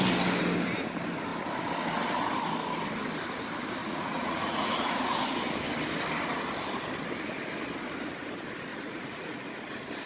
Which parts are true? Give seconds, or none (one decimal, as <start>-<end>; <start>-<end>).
0.0-3.8; 5.2-8.7; 9.4-10.1